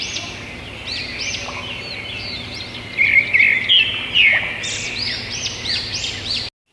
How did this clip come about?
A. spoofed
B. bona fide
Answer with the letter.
B